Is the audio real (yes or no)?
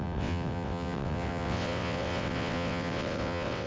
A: no